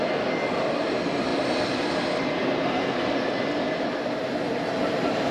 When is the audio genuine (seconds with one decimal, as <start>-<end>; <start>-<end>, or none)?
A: 0.0-5.3